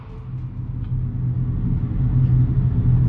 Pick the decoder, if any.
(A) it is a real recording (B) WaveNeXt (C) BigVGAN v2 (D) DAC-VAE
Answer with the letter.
A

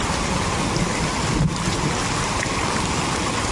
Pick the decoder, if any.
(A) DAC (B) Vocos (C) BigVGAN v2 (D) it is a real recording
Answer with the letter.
D